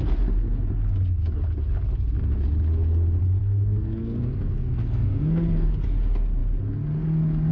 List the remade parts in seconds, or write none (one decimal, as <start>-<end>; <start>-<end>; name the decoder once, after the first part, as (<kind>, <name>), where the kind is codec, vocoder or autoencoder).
3.4-5.7 (codec, SNAC)